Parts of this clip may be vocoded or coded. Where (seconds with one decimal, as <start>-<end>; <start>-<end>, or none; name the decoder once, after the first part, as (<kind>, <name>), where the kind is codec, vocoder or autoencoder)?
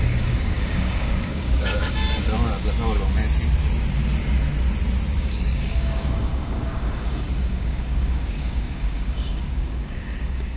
0.0-2.0 (codec, DAC); 5.2-10.6